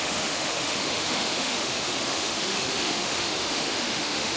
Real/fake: fake